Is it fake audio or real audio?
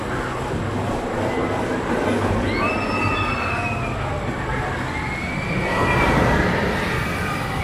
real